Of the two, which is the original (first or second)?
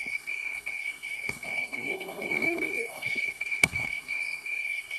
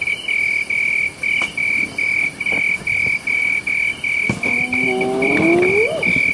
second